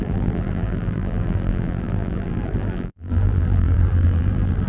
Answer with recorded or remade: remade